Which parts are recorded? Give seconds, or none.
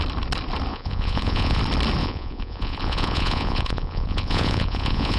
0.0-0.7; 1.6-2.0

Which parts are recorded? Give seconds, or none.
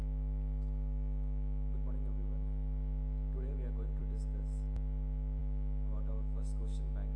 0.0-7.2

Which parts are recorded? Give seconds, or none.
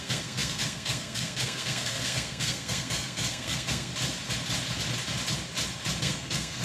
3.9-6.0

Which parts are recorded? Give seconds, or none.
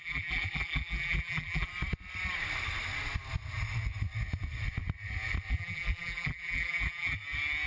1.7-5.5; 7.2-7.7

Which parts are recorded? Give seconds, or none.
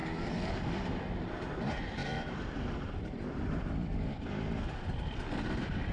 0.0-2.0; 3.3-5.9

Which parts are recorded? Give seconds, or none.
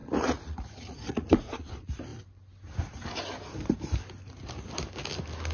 1.7-5.5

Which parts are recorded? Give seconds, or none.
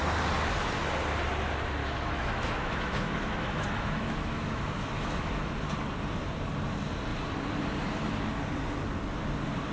0.0-1.8; 5.5-9.7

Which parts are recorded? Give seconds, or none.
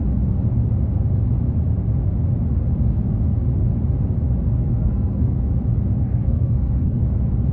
0.0-4.6; 5.4-6.0; 7.0-7.5